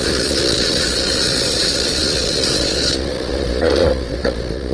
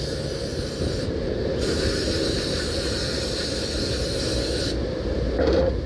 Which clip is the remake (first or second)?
first